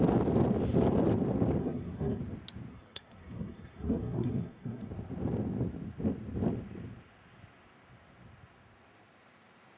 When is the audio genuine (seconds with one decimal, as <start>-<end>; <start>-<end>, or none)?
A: 0.0-1.6; 2.2-2.7; 4.9-9.8